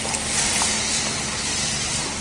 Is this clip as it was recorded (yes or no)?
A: no